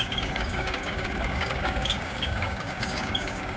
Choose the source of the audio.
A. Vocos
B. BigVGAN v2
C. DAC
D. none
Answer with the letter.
C